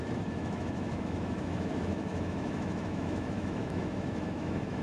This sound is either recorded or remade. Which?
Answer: remade